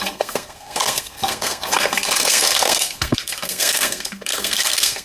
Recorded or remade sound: remade